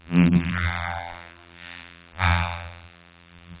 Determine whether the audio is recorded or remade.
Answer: remade